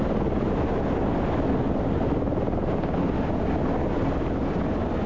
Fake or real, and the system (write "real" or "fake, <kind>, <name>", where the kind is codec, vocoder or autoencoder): real